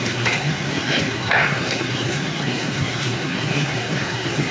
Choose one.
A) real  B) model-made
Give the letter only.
B